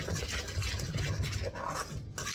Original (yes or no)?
yes